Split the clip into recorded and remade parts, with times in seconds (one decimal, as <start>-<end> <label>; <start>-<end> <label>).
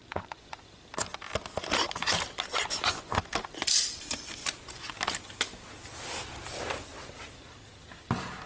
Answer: 0.0-0.8 remade; 0.8-2.5 recorded; 2.5-3.2 remade; 3.2-4.4 recorded; 4.4-4.9 remade; 4.9-8.5 recorded